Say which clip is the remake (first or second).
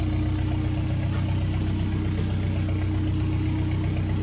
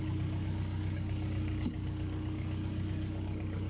second